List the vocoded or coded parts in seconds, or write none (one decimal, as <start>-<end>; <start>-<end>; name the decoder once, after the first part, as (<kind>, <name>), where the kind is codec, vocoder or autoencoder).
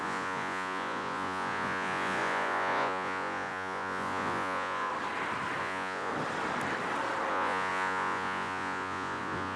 0.0-4.9 (vocoder, Vocos); 5.6-6.1; 7.3-9.6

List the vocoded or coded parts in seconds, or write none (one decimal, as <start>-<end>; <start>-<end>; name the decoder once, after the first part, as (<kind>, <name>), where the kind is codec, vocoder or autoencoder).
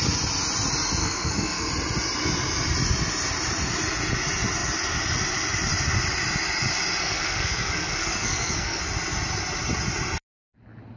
1.0-1.7 (codec, SNAC); 7.0-8.8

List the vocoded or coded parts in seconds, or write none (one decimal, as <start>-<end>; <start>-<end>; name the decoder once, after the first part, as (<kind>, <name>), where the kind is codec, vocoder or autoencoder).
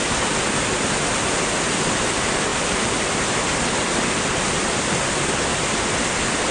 none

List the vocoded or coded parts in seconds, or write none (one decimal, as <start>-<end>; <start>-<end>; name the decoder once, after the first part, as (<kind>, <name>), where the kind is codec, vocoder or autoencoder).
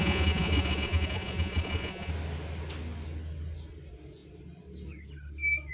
0.0-2.1 (vocoder, Vocos)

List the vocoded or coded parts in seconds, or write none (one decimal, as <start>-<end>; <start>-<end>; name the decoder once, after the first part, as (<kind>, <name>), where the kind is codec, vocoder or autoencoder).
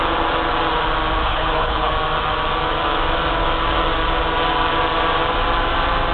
1.2-1.9 (codec, HILCodec)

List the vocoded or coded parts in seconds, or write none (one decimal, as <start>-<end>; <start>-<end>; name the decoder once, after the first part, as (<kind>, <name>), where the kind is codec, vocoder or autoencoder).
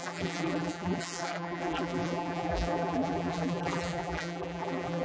0.0-5.0 (vocoder, BigVGAN v2)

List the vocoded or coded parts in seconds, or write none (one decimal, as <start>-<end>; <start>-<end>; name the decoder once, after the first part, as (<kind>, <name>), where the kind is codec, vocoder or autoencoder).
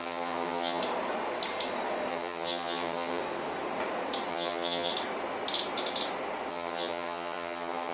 0.0-0.8 (vocoder, HiFi-GAN); 2.1-3.2; 4.3-4.9; 6.5-7.9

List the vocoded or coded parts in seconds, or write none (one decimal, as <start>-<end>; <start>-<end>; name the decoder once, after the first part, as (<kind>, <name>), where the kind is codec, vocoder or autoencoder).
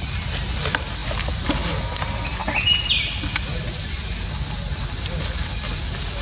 1.0-1.5 (vocoder, BigVGAN v2)